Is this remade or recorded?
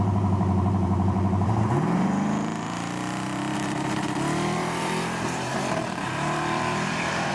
remade